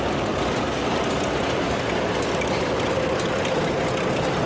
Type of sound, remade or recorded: recorded